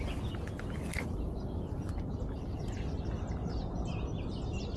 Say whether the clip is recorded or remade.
recorded